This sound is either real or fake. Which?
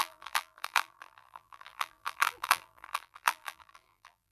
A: fake